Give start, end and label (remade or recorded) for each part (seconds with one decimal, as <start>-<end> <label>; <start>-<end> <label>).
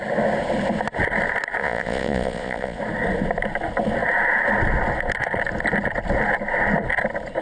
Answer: 0.0-1.6 recorded; 1.6-2.8 remade; 2.8-7.4 recorded